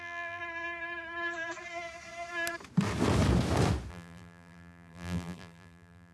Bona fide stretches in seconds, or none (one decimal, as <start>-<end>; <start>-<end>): 0.4-3.9